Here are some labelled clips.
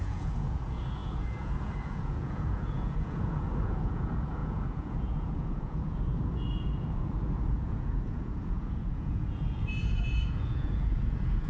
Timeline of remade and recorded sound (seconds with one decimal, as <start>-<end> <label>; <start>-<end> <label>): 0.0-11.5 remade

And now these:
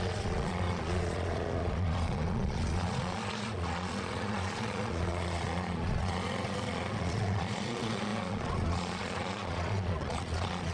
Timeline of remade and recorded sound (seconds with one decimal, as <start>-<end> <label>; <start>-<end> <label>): 0.0-10.7 remade

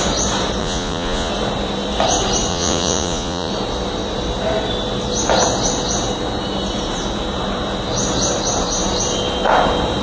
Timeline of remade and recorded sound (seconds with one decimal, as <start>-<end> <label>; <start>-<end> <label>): 0.0-0.6 recorded; 0.6-1.3 remade; 1.3-2.5 recorded; 2.5-3.5 remade; 3.5-10.0 recorded

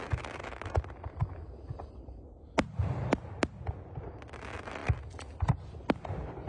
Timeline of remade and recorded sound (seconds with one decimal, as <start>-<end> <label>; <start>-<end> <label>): 0.0-6.5 recorded

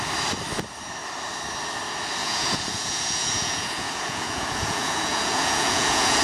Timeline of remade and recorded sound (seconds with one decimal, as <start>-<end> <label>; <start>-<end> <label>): 0.0-2.2 recorded; 2.2-6.2 remade

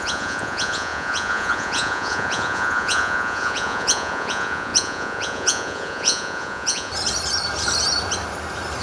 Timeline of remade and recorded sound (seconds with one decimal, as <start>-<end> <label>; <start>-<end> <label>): 0.0-6.9 remade; 6.9-8.8 recorded

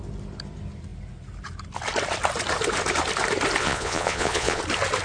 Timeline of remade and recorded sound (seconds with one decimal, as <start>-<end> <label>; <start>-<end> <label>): 0.0-3.6 recorded; 3.6-4.6 remade; 4.6-5.0 recorded